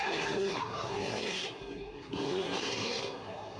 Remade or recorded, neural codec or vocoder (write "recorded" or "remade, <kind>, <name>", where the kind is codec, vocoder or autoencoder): remade, codec, SNAC